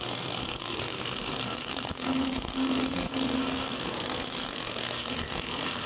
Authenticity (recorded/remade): remade